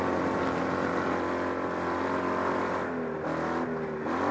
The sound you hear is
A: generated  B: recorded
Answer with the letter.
B